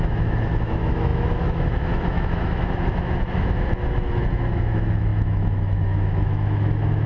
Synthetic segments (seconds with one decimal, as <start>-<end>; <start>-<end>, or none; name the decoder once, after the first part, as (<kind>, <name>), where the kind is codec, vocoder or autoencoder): 0.0-7.1 (autoencoder, DAC-VAE)